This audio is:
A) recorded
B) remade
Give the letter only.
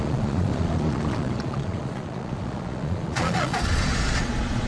B